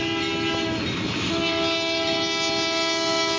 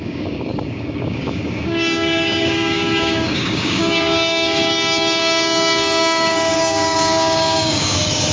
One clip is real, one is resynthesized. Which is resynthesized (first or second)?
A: second